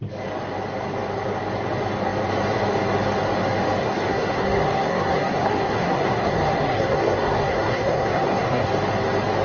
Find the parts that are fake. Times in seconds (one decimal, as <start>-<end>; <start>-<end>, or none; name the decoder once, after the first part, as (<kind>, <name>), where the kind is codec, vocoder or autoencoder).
3.8-8.7 (codec, SNAC)